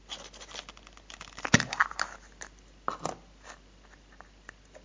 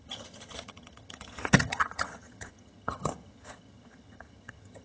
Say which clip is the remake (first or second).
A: second